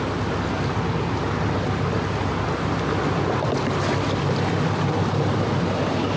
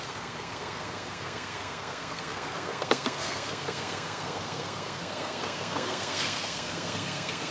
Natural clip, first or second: first